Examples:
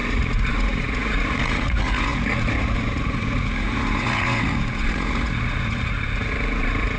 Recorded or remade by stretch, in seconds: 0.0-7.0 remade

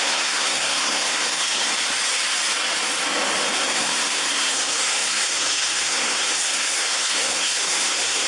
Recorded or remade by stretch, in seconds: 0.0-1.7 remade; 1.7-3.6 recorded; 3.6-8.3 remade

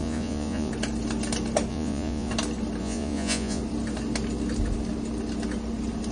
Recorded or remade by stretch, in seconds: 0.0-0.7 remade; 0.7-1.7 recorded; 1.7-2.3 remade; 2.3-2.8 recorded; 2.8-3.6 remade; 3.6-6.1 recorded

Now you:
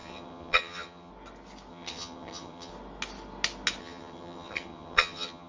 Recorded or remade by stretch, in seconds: 0.0-1.1 remade; 1.1-1.7 recorded; 1.7-2.7 remade; 2.7-3.8 recorded; 3.8-5.5 remade